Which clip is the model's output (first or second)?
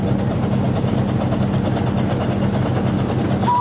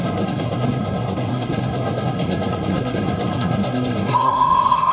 second